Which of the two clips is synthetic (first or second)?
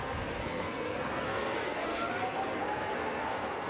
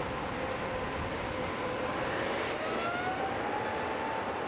first